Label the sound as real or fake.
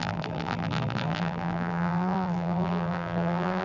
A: fake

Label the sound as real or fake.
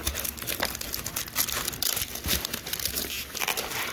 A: real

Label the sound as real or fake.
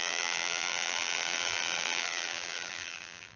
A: fake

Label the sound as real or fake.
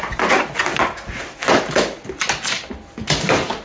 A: real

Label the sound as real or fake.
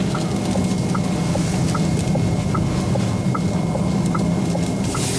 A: real